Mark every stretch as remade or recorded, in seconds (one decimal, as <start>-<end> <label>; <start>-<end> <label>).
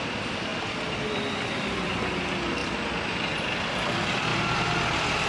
0.0-2.6 remade; 2.6-3.4 recorded; 3.4-4.3 remade; 4.3-5.3 recorded